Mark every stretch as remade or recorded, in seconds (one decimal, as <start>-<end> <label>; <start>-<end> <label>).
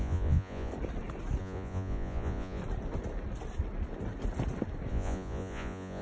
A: 0.0-0.7 remade; 0.7-1.4 recorded; 1.4-2.6 remade; 2.6-4.9 recorded; 4.9-6.0 remade